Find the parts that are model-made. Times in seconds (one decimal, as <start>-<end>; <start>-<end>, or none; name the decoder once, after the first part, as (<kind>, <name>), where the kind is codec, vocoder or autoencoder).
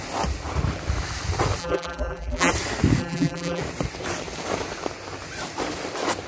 1.6-2.5 (vocoder, BigVGAN v2); 3.0-3.6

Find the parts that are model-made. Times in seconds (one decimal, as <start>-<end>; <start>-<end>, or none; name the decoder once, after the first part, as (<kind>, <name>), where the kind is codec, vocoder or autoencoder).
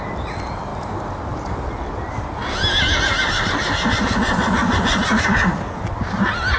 none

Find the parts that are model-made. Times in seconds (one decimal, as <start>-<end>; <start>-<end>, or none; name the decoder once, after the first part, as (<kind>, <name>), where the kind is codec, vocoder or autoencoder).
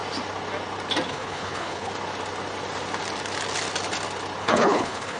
1.1-1.9 (codec, HILCodec); 4.4-5.2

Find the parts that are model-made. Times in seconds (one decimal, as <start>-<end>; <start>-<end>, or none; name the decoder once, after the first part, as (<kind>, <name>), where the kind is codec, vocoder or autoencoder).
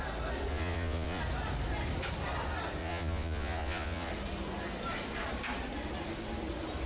0.5-1.2 (vocoder, Vocos); 2.8-4.1